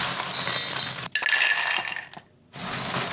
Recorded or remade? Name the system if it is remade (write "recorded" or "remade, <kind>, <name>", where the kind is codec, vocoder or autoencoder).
recorded